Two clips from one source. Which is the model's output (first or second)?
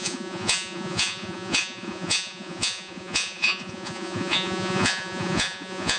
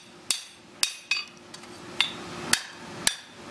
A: first